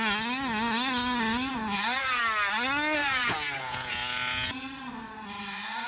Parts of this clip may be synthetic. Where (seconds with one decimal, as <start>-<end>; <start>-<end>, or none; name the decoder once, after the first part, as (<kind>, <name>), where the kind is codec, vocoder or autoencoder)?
1.5-2.2 (vocoder, Vocos); 3.0-3.9